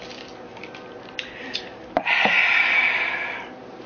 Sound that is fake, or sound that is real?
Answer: real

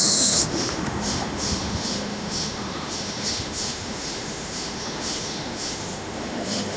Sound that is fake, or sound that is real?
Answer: fake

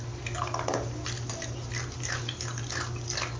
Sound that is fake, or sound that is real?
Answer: real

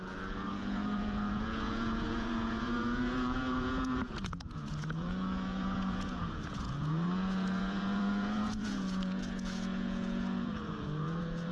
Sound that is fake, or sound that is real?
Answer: fake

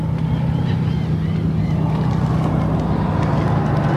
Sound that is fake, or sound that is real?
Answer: real